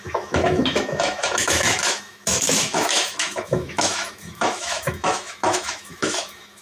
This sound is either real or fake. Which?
fake